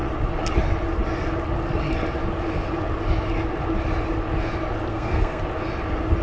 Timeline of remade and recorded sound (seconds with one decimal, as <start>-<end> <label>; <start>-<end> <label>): 0.0-4.9 recorded; 4.9-5.4 remade; 5.4-6.2 recorded